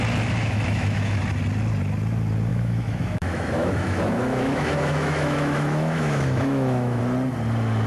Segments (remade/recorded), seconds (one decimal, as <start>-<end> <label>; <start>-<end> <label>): 0.0-0.4 recorded; 0.4-1.2 remade; 1.2-2.5 recorded; 2.5-7.0 remade; 7.0-7.9 recorded